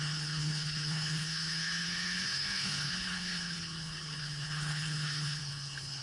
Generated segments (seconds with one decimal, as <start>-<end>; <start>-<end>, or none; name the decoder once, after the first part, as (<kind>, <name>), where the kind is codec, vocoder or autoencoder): 0.0-6.0 (codec, HILCodec)